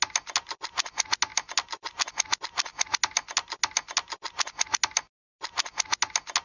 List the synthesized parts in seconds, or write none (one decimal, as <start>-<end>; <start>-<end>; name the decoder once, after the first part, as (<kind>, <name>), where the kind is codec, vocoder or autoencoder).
none